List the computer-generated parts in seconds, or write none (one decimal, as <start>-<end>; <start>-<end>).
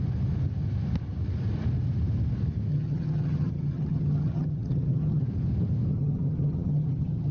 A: 2.7-5.2; 5.9-7.3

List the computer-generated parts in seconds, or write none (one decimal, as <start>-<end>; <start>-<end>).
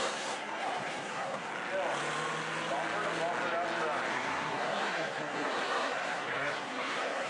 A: 0.0-1.5; 4.1-7.3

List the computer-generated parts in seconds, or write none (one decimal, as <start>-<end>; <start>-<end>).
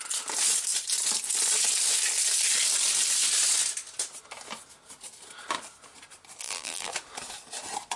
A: 6.4-6.9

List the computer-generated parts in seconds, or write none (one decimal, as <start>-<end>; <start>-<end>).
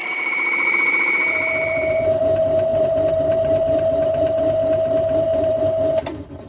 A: 0.0-2.2; 2.7-5.6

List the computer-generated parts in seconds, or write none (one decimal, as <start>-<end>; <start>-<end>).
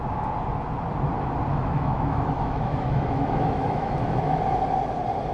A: 1.5-4.4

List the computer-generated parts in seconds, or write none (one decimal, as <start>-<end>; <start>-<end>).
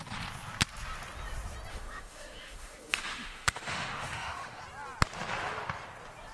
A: 1.7-4.6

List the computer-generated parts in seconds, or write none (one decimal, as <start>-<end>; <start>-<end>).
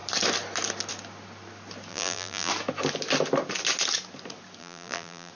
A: 1.9-2.5; 4.6-5.3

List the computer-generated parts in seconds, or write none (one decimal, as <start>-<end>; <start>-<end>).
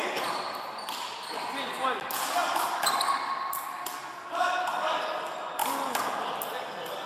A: none